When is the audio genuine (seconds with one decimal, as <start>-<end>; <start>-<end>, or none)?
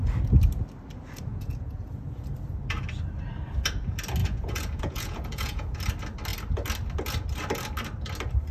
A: 0.0-1.3; 2.2-4.2; 5.8-8.5